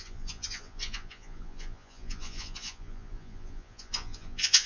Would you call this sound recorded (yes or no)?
no